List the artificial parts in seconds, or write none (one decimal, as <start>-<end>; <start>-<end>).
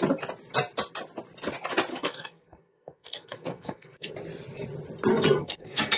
1.9-4.1; 5.1-6.0